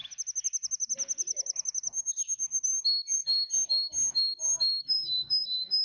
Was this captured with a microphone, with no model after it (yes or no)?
yes